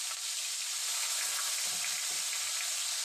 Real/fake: real